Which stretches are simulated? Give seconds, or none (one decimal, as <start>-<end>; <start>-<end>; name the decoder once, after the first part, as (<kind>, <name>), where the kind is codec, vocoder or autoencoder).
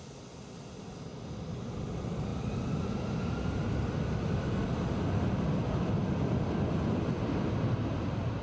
none